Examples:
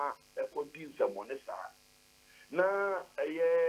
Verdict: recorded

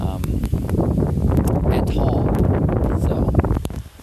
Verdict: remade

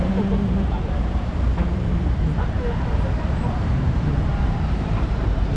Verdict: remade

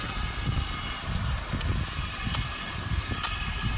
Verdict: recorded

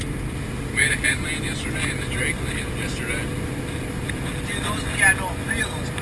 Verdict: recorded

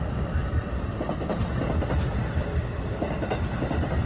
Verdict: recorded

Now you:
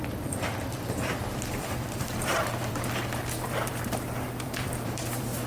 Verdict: remade